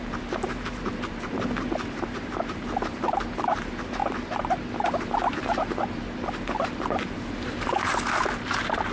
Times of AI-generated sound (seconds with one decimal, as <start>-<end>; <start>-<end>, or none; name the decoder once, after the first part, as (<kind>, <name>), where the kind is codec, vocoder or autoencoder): 0.0-8.9 (vocoder, BigVGAN v2)